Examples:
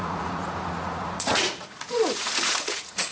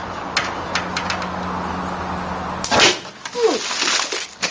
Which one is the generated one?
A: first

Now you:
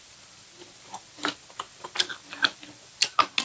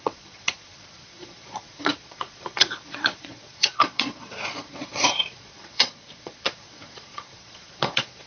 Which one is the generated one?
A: second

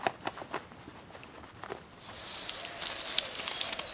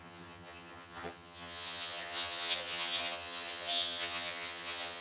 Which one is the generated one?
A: second